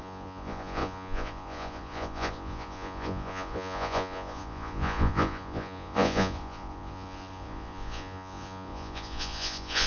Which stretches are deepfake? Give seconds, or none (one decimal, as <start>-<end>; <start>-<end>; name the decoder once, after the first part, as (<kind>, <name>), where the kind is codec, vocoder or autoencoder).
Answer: 0.0-9.9 (vocoder, Vocos)